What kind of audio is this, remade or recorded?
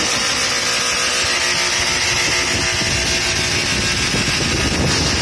recorded